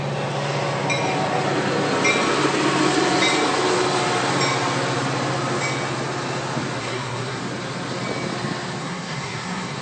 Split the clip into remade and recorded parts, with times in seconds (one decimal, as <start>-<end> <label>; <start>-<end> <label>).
0.0-6.8 recorded; 6.8-7.4 remade; 7.4-8.8 recorded; 8.8-9.8 remade